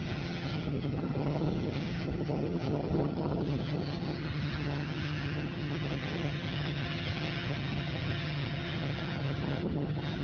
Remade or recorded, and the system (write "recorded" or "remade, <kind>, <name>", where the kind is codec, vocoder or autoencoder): remade, vocoder, HiFi-GAN